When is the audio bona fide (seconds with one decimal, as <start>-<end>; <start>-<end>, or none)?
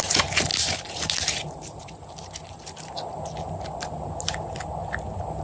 0.0-5.4